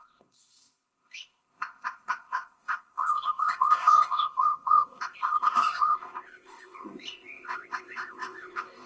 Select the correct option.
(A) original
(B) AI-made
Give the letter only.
B